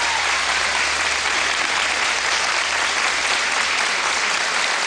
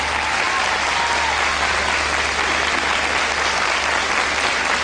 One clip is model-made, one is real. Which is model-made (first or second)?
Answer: first